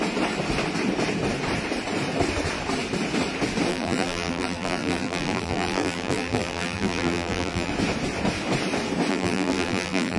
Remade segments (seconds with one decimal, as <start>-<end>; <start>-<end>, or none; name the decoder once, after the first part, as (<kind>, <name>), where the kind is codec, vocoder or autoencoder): 3.7-7.7 (vocoder, BigVGAN v2); 9.1-10.2